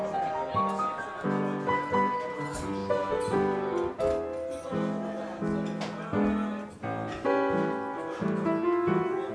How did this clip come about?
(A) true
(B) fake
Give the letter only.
A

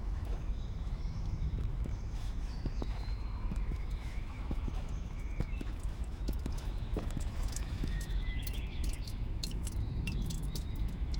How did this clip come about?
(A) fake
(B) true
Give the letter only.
A